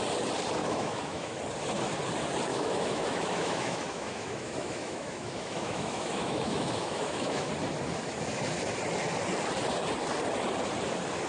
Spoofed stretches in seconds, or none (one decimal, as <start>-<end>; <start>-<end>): 0.6-1.4; 2.5-7.5